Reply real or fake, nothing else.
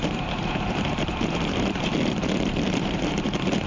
fake